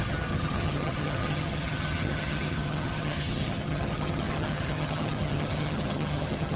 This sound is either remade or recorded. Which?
remade